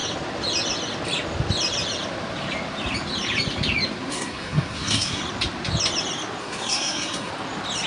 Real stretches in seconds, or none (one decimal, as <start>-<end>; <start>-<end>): 0.0-4.1; 5.2-6.4; 7.3-7.9